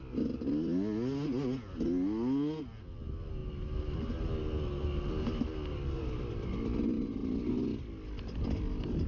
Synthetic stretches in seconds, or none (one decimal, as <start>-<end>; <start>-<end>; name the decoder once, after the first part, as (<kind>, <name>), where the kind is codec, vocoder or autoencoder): none